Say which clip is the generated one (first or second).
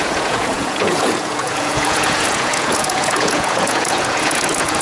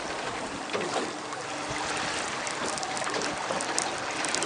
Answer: first